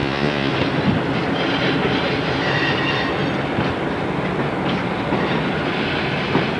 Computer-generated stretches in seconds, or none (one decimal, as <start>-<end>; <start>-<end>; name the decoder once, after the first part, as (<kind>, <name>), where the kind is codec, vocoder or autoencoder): 0.0-0.5 (vocoder, Vocos)